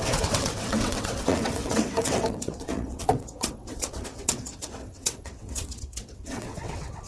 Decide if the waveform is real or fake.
fake